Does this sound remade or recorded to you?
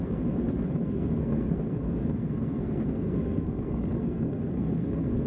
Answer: remade